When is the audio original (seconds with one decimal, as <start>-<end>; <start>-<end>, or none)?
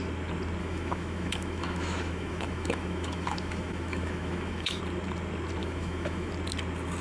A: 0.0-0.6; 4.8-5.6; 6.3-7.0